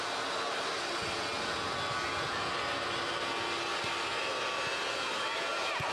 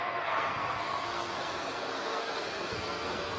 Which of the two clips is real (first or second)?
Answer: first